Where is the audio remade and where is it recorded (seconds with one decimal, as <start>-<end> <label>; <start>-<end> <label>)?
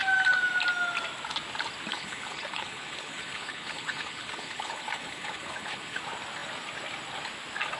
0.0-1.9 recorded; 1.9-6.0 remade; 6.0-7.8 recorded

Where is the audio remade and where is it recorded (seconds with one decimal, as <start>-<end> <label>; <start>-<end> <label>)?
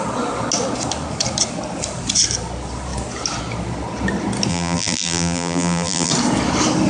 0.0-4.5 recorded; 4.5-6.1 remade; 6.1-6.9 recorded